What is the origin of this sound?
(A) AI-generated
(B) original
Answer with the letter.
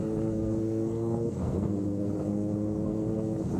A